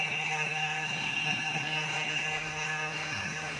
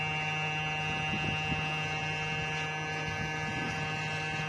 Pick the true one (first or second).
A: second